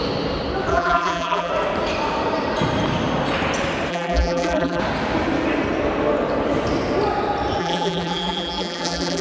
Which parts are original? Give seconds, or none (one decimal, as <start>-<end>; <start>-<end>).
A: 0.0-0.7; 1.5-3.9; 4.8-7.6